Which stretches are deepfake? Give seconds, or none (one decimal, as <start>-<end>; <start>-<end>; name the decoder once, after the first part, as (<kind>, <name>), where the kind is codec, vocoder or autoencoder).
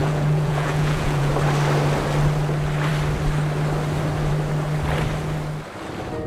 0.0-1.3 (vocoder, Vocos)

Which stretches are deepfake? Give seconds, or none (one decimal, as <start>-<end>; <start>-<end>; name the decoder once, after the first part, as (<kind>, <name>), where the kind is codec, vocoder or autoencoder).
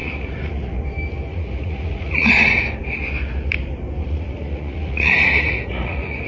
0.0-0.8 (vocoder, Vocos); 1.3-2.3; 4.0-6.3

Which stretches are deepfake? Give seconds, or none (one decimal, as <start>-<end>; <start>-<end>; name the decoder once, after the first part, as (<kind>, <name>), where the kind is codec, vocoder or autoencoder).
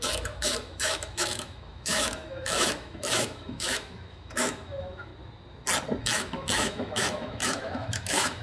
0.0-5.1 (autoencoder, DAC-VAE); 6.0-8.4